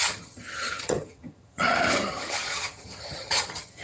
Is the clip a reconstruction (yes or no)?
yes